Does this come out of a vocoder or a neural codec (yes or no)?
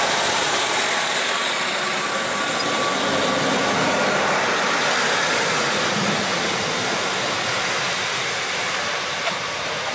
no